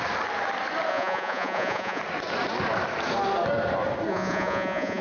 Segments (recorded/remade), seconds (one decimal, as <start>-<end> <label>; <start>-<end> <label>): 0.0-0.9 recorded; 0.9-2.0 remade; 2.0-4.1 recorded; 4.1-5.0 remade